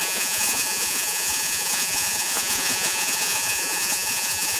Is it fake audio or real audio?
fake